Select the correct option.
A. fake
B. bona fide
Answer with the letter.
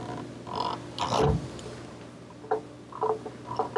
B